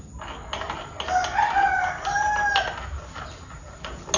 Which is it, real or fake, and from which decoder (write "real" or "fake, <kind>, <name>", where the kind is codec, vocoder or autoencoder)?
real